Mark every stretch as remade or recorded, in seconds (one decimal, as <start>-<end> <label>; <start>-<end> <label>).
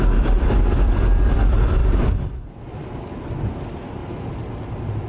0.0-1.8 remade; 1.8-2.3 recorded; 2.3-4.0 remade; 4.0-5.1 recorded